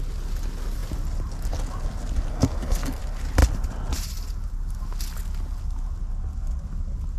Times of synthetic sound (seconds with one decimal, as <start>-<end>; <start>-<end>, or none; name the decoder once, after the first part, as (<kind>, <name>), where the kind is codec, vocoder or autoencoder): 2.3-3.0 (codec, SNAC)